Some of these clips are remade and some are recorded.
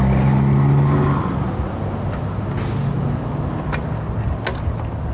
recorded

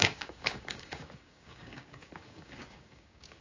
remade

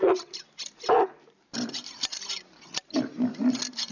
recorded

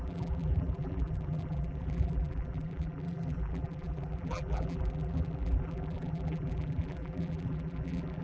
remade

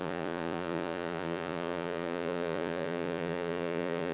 remade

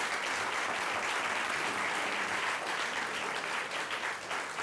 recorded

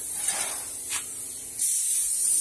recorded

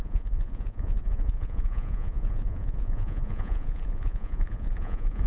remade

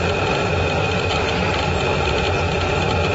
recorded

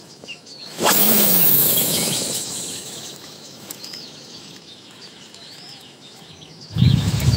remade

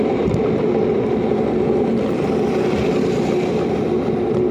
recorded